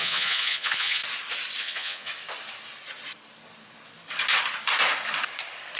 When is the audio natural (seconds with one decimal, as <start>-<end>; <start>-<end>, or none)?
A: 1.0-1.6; 2.1-5.8